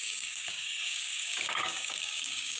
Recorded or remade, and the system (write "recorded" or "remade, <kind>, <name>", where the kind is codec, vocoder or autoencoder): remade, codec, DAC